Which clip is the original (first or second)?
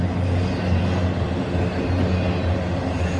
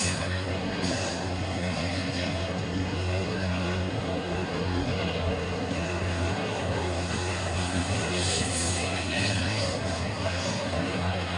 first